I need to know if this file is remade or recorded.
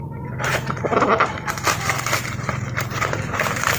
remade